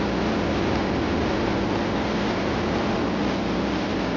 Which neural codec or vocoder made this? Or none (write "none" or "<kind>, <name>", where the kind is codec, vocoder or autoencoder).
none